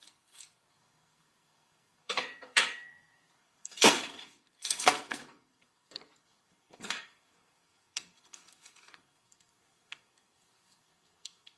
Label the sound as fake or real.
fake